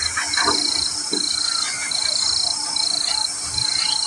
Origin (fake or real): real